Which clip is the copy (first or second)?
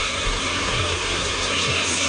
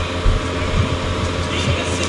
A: first